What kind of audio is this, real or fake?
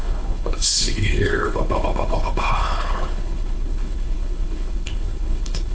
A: fake